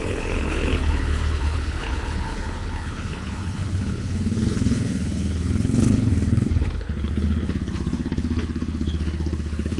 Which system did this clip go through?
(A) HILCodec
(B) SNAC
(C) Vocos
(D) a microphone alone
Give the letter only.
A